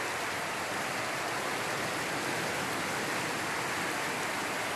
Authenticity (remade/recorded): recorded